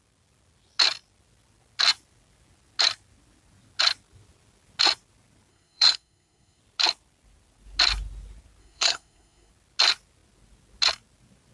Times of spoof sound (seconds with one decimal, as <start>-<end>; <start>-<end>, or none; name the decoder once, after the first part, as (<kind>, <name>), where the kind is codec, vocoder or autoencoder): 5.5-6.6 (codec, SNAC); 8.6-9.5